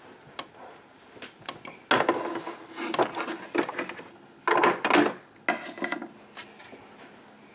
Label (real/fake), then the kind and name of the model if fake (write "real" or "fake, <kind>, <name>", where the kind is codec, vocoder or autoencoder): real